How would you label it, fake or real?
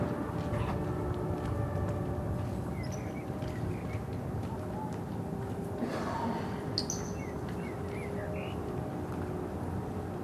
real